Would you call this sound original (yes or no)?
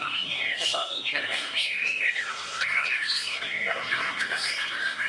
no